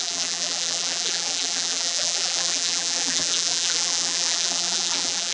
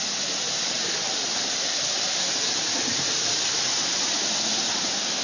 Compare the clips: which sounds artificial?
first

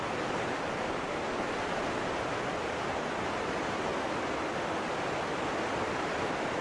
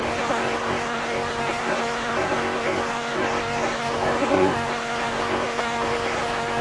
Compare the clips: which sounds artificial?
second